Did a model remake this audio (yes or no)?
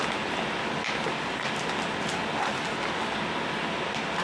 no